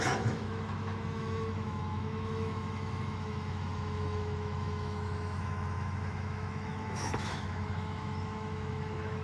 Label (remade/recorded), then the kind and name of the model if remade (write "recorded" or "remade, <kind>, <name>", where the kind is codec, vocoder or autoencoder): remade, autoencoder, DAC-VAE